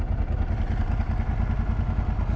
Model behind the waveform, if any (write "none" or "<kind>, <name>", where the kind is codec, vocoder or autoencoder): none